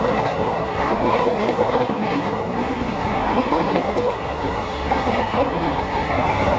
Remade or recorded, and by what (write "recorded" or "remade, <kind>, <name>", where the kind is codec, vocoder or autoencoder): remade, codec, SNAC